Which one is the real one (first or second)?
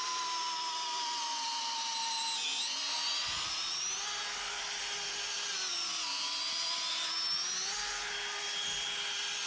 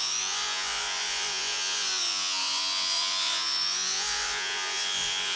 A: first